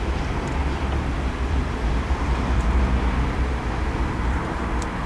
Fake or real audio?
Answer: fake